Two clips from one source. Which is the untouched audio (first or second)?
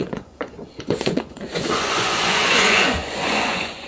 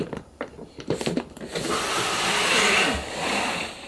second